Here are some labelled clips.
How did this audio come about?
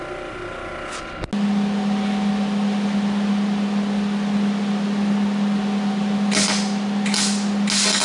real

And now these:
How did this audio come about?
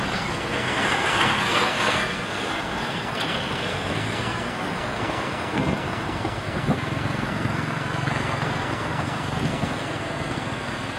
fake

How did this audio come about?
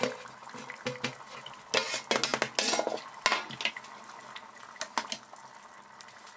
real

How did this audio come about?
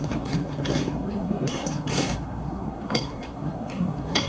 fake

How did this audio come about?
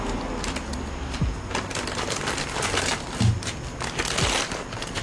real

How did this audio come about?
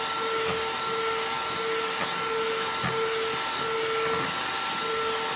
real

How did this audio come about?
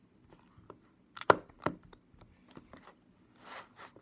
real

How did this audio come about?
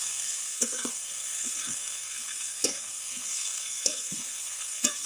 fake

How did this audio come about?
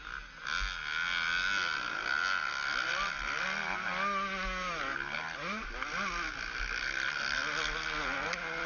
real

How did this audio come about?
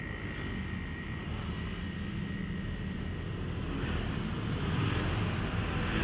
real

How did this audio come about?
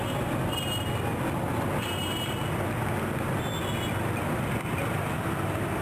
real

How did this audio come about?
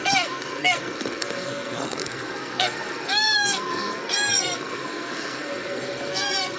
fake